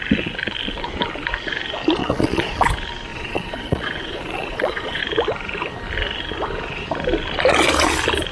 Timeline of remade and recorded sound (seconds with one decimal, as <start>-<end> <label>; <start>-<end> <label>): 0.0-2.0 recorded; 2.0-2.7 remade; 2.7-3.1 recorded; 3.1-5.0 remade; 5.0-8.3 recorded